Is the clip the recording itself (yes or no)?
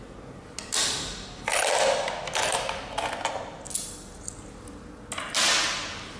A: yes